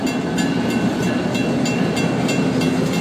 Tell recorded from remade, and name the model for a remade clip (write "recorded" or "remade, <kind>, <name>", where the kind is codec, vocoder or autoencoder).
recorded